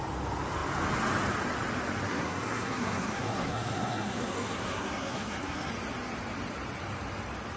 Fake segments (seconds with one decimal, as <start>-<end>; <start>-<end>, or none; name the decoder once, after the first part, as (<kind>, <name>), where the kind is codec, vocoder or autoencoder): 2.1-5.7 (codec, SNAC)